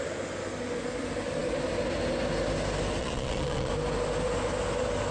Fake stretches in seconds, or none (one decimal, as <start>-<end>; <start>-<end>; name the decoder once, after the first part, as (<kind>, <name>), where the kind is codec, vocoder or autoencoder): 3.0-3.7 (vocoder, Vocos)